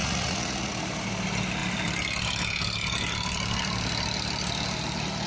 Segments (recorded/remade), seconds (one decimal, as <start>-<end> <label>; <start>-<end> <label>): 0.0-0.7 remade; 0.7-5.3 recorded